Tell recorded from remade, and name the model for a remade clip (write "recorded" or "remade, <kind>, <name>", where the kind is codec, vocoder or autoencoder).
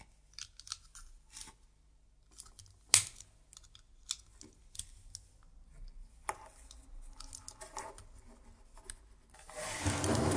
recorded